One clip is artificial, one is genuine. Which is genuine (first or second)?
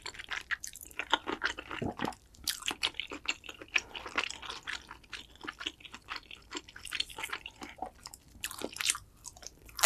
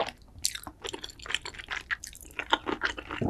second